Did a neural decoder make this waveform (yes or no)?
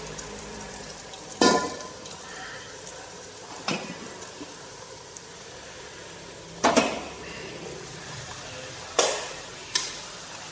yes